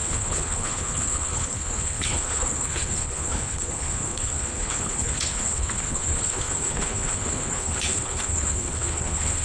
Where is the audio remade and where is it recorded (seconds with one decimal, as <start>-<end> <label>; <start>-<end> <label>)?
0.0-9.4 remade